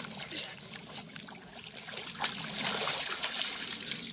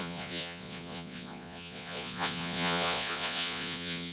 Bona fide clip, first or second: first